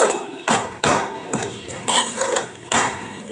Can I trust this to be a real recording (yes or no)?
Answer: no